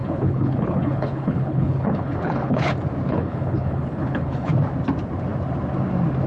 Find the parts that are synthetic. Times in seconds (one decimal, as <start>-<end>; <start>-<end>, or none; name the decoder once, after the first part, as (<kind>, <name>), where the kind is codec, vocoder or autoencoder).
0.0-2.7 (codec, HILCodec); 3.1-4.5